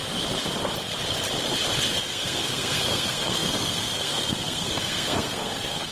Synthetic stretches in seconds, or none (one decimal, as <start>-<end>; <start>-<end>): 2.0-5.9